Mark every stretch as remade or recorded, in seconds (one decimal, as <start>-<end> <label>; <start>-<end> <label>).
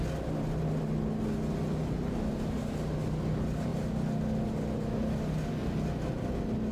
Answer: 0.0-6.7 recorded